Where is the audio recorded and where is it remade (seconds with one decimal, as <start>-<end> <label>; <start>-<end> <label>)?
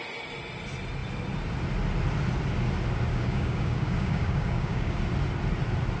0.0-3.1 recorded; 3.1-5.0 remade; 5.0-6.0 recorded